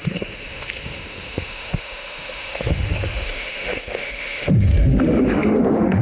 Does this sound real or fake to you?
fake